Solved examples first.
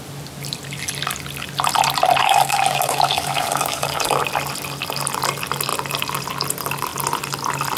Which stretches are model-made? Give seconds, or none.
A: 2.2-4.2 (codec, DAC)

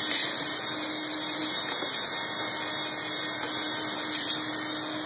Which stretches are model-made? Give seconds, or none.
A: none

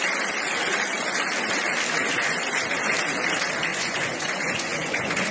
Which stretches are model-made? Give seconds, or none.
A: 3.7-5.3 (vocoder, Vocos)

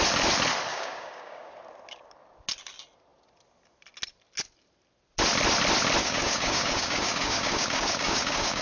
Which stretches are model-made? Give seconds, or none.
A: 0.7-1.5 (codec, DAC); 6.0-8.6

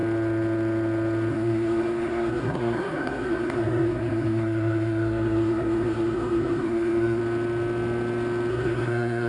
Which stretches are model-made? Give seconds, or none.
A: 1.3-7.2 (codec, SNAC); 8.5-9.3

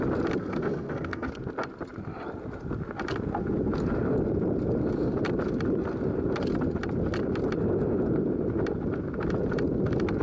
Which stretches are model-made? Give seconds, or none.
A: 0.4-1.3 (codec, SNAC)